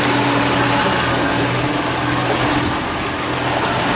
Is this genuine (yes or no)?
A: yes